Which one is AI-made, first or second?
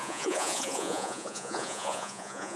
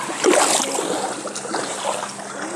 first